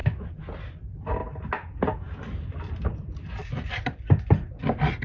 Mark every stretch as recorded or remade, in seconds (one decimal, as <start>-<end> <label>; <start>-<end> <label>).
0.0-5.0 recorded